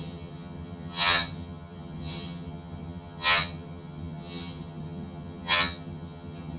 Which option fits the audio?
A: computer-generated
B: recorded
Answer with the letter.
A